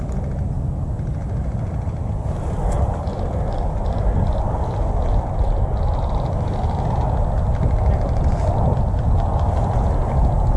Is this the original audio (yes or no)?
yes